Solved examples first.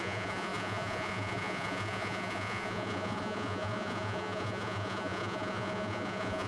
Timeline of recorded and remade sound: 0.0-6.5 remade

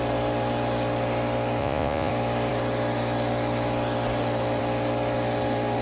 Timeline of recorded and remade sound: 0.0-1.6 recorded; 1.6-2.1 remade; 2.1-5.8 recorded

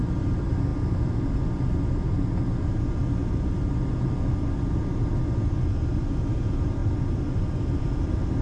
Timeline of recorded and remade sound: 0.0-8.4 recorded